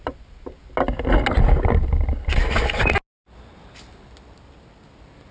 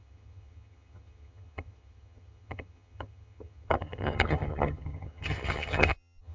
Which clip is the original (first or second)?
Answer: first